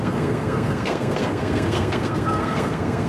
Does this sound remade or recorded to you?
remade